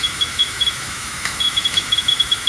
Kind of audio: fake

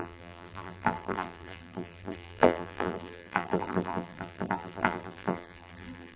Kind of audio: fake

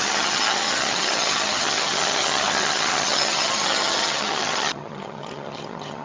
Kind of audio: fake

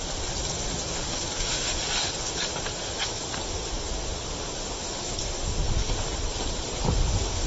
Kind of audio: real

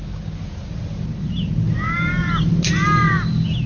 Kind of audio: real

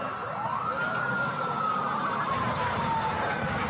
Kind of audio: real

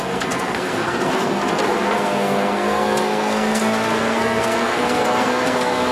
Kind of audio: fake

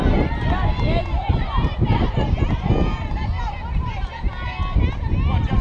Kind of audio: real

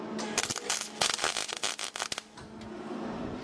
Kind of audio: real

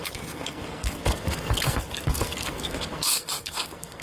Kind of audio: fake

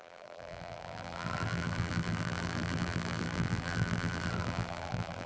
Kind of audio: fake